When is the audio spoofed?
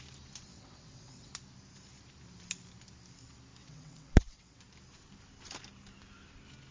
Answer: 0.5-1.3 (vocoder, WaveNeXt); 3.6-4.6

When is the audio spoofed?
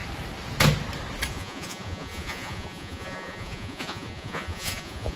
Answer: 1.3-5.2 (vocoder, Vocos)